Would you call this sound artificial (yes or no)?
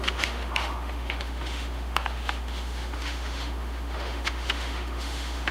yes